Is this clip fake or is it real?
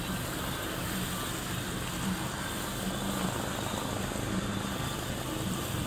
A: real